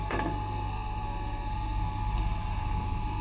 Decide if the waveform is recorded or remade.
remade